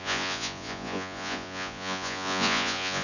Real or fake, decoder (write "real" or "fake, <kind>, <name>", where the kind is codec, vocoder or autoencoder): fake, vocoder, Vocos